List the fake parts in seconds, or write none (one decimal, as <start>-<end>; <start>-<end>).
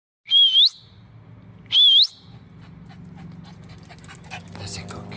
none